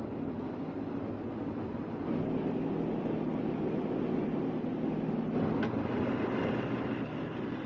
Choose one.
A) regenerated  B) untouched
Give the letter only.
B